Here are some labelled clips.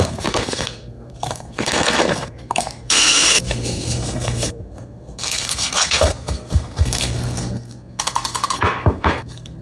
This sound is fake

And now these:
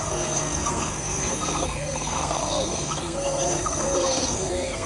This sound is fake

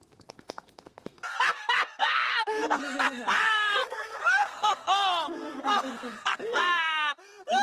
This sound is fake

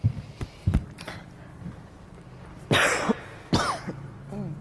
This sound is real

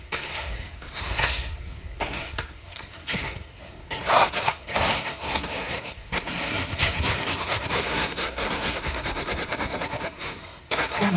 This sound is fake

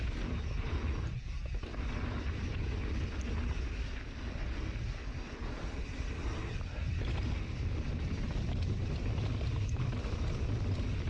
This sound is real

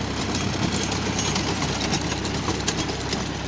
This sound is real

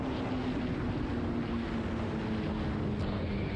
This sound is real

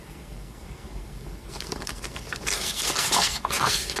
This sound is fake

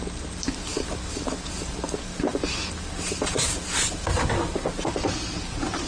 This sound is real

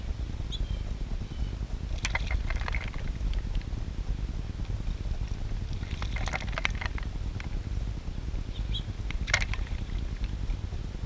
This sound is real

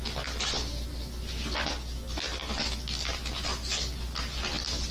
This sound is real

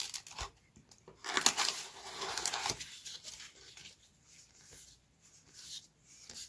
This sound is real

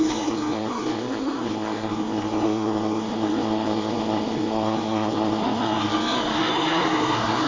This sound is fake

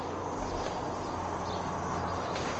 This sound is real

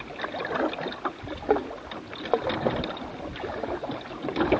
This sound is real